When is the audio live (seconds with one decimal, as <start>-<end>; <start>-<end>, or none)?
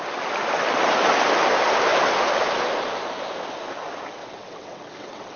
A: 0.0-4.2